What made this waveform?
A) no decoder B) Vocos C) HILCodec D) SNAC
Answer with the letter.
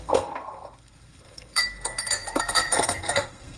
D